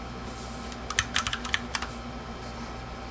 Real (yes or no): yes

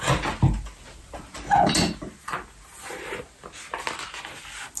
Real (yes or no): yes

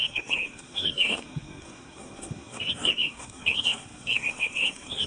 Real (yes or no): no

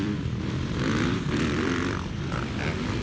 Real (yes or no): no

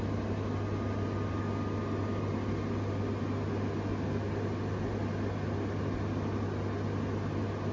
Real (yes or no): yes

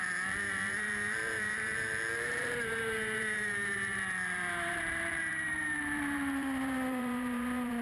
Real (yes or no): no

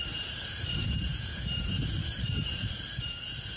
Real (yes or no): no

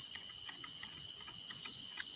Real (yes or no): no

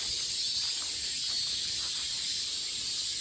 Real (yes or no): yes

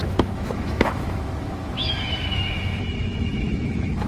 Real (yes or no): no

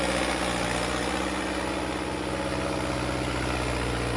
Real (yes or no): yes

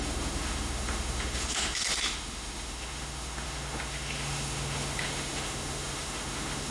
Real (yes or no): no